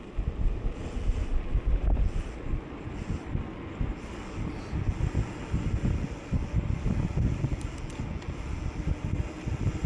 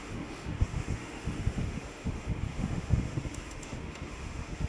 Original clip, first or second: first